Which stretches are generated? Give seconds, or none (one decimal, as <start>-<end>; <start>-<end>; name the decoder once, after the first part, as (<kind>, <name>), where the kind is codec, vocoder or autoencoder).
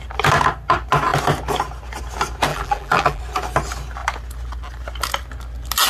2.5-3.2 (vocoder, BigVGAN v2)